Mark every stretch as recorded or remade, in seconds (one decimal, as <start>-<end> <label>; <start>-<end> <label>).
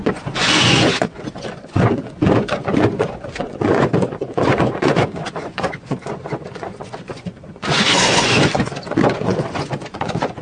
0.0-10.4 remade